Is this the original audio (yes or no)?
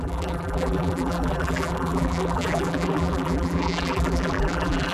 no